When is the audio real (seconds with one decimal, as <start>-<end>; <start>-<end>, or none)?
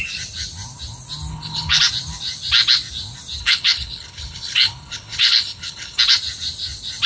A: 0.0-1.3; 1.8-3.4; 6.0-7.1